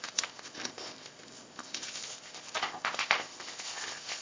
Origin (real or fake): fake